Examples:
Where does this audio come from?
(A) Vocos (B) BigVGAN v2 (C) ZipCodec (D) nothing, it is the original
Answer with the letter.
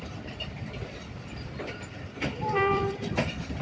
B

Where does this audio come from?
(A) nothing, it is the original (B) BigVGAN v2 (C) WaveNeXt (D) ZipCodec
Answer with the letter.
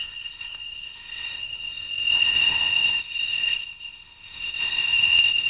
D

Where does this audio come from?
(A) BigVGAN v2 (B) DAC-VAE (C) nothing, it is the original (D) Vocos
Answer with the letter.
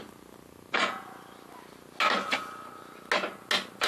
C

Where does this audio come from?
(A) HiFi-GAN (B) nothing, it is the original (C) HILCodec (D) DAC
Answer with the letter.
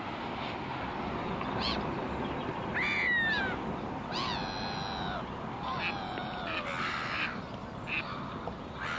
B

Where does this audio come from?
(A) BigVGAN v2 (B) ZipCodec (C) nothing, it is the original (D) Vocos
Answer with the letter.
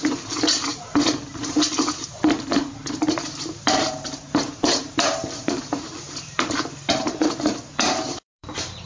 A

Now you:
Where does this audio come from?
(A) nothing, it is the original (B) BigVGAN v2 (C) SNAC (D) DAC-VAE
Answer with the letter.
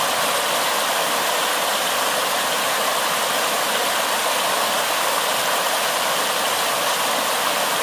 A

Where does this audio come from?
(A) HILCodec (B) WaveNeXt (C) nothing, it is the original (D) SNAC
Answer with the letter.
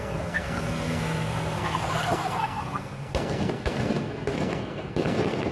D